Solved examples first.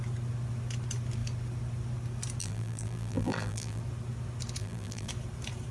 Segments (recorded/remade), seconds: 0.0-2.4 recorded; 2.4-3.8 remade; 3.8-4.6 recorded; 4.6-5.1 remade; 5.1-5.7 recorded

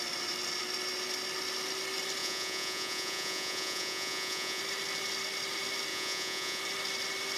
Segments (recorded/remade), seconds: 0.0-2.2 recorded; 2.2-4.6 remade; 4.6-5.9 recorded; 5.9-6.6 remade; 6.6-7.4 recorded